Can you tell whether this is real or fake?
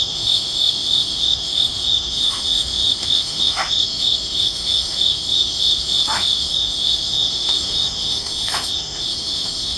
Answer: fake